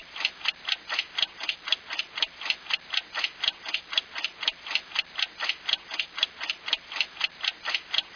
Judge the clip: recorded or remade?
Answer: recorded